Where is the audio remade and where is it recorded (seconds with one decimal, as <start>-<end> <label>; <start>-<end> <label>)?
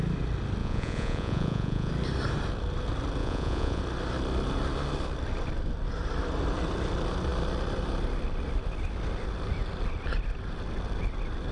0.0-0.6 recorded; 0.6-1.9 remade; 1.9-3.2 recorded; 3.2-3.8 remade; 3.8-11.5 recorded